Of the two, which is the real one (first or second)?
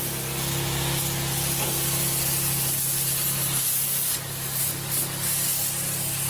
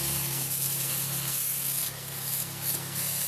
first